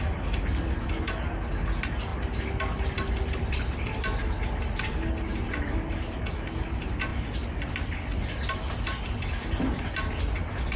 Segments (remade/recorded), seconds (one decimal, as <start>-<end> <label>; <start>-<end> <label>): 0.0-10.8 recorded